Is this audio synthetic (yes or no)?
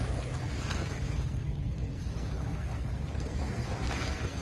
yes